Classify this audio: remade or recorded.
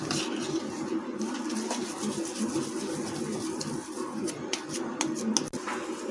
recorded